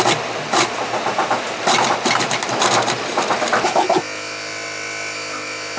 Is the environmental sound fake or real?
real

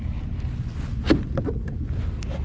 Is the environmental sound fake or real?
real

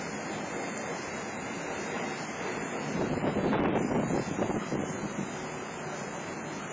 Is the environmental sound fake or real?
real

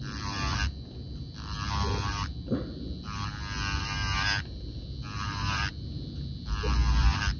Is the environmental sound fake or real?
real